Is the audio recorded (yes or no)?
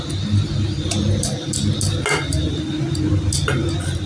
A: yes